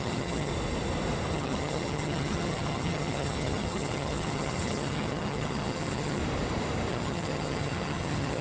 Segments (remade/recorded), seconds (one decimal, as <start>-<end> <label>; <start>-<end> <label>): 0.0-0.5 remade; 0.5-1.3 recorded; 1.3-6.2 remade; 6.2-6.9 recorded; 6.9-8.4 remade